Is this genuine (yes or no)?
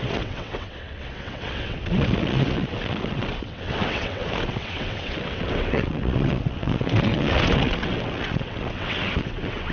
no